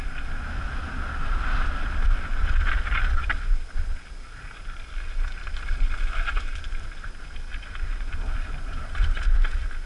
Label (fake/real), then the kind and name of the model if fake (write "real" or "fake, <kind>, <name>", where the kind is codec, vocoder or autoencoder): real